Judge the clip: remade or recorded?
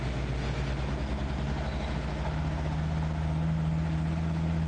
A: recorded